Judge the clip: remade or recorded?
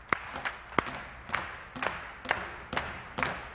recorded